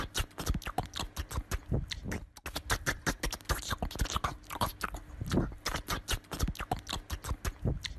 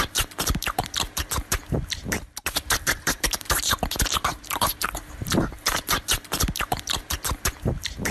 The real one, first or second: first